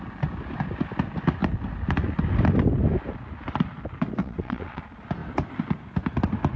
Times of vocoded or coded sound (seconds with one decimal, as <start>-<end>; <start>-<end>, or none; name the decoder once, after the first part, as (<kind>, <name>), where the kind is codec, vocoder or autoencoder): 4.2-4.8 (vocoder, WaveNeXt)